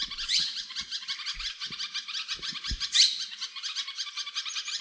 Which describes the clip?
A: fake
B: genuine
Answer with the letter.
B